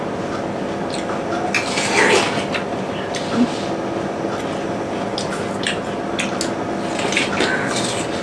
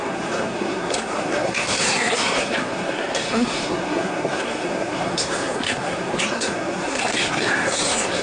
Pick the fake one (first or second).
second